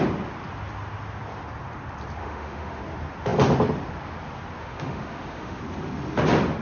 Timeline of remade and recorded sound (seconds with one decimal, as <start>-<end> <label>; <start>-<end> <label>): 0.0-2.2 recorded; 2.2-2.8 remade; 2.8-4.6 recorded; 4.6-5.6 remade; 5.6-6.6 recorded